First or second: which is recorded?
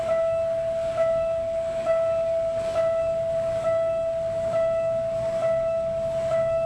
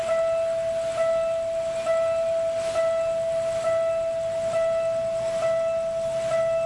second